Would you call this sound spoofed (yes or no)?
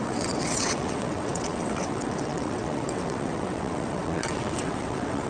yes